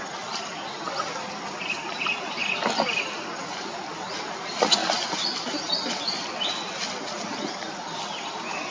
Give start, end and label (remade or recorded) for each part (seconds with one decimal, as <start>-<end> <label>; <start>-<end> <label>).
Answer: 0.0-8.7 recorded